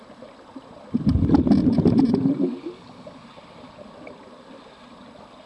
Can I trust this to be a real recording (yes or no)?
yes